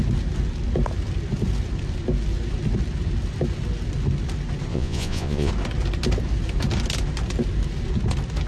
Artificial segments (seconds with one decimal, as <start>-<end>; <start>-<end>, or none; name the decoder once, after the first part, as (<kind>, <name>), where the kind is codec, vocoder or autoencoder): 4.7-5.5 (vocoder, Vocos)